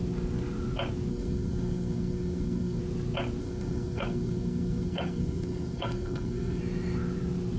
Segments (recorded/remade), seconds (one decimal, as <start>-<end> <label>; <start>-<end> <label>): 0.0-1.1 recorded; 1.1-2.8 remade; 2.8-3.4 recorded; 3.4-6.6 remade; 6.6-7.6 recorded